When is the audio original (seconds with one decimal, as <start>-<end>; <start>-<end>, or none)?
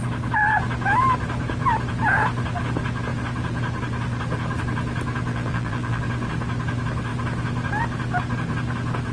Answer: 0.0-5.3; 6.0-9.1